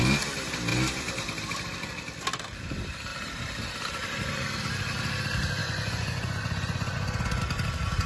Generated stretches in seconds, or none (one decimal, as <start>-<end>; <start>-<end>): 5.6-7.4